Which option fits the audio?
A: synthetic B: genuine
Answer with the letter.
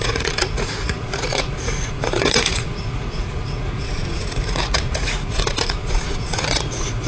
A